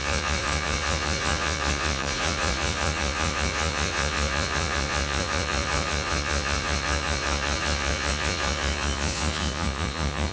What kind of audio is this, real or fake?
fake